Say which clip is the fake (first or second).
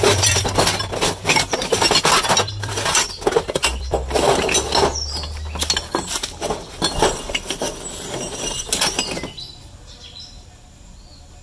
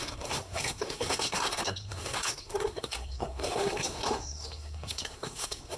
second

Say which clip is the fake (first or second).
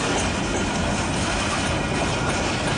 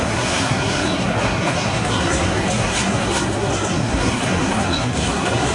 second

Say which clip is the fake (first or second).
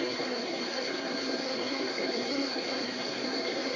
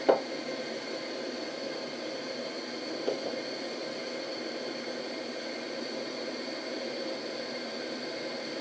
first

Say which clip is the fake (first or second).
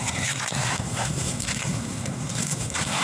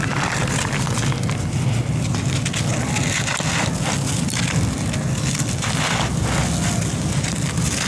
first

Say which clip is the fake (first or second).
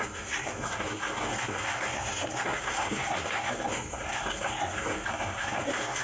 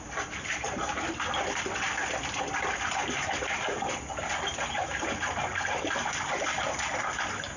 first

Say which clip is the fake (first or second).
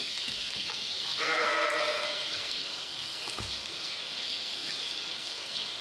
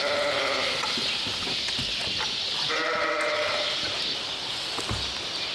first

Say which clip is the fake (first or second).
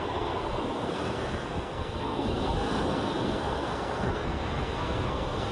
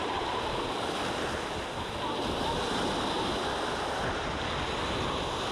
first